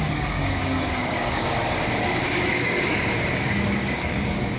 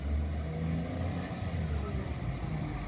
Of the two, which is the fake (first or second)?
first